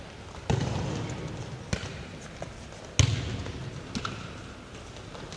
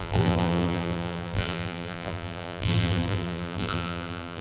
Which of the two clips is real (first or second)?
first